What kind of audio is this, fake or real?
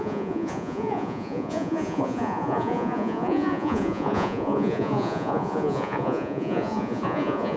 fake